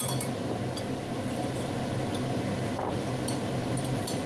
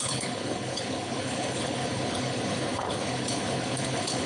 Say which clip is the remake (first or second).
second